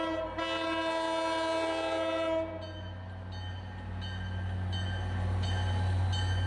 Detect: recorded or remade recorded